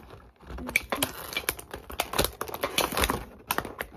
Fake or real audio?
real